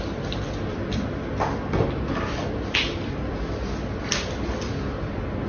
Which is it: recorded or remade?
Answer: recorded